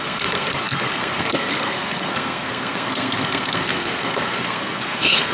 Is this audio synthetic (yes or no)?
yes